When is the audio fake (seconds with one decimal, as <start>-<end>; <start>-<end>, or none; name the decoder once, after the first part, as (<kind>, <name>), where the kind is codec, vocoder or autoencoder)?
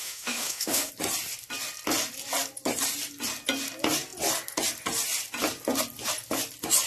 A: 0.0-0.9 (autoencoder, DAC-VAE)